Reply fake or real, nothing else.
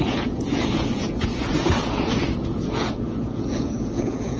fake